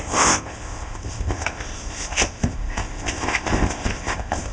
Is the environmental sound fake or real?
fake